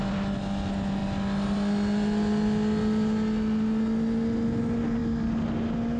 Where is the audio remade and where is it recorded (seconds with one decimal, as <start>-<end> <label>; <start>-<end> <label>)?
0.0-6.0 recorded